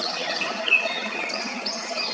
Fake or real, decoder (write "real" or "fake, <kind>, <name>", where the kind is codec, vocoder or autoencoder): fake, vocoder, HiFi-GAN